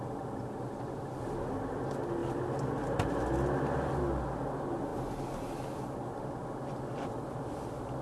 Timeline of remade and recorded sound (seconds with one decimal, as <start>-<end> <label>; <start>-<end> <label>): 0.0-8.0 recorded